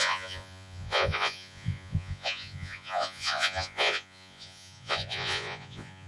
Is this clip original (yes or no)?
no